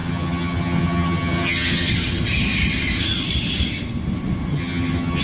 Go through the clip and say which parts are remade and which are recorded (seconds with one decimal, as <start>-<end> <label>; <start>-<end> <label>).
0.0-1.9 remade; 1.9-4.5 recorded; 4.5-5.2 remade